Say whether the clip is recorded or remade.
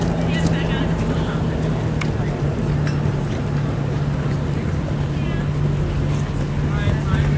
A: recorded